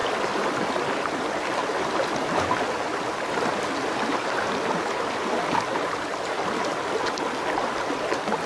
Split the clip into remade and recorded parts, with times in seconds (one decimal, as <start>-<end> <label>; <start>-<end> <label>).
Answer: 0.0-8.5 recorded